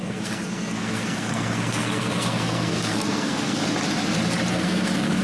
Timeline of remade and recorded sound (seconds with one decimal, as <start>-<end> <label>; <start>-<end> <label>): 0.0-3.6 remade; 3.6-4.5 recorded; 4.5-5.2 remade